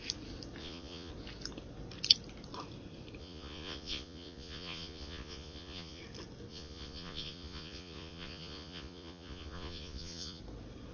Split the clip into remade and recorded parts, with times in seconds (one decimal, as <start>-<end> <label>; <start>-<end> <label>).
0.0-0.6 recorded; 0.6-1.1 remade; 1.1-3.2 recorded; 3.2-6.0 remade; 6.0-6.5 recorded; 6.5-10.4 remade; 10.4-10.9 recorded